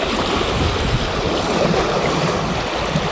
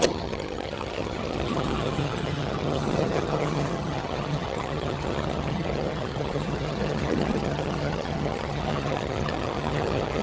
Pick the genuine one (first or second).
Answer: first